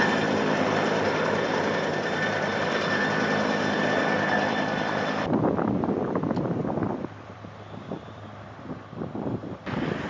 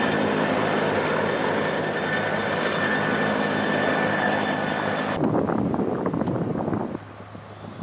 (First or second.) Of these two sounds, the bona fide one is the second